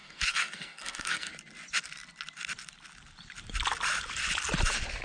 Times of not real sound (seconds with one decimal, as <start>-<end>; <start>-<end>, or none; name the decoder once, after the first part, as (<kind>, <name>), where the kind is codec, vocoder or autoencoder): 0.0-1.3 (codec, SNAC)